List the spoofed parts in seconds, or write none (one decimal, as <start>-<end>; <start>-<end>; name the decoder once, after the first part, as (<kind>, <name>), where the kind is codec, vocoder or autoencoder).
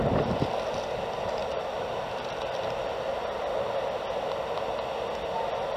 1.4-2.0 (vocoder, BigVGAN v2)